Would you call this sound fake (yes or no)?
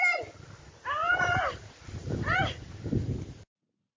no